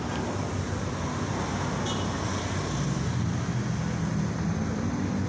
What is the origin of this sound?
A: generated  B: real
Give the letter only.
B